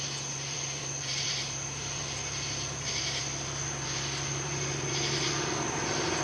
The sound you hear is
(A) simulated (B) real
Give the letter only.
A